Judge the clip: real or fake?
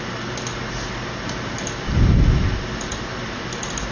real